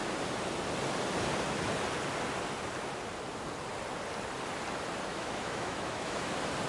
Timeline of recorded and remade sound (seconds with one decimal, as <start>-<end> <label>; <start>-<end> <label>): 0.0-5.1 recorded; 5.1-6.3 remade; 6.3-6.7 recorded